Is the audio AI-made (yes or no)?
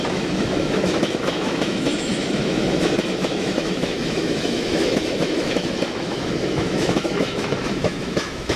yes